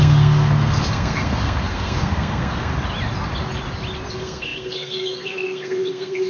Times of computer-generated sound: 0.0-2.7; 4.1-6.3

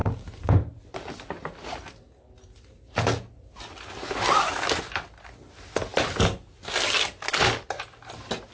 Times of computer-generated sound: none